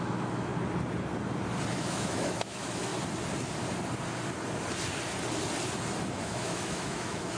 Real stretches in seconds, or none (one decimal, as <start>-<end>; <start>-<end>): 0.5-1.7; 2.9-6.2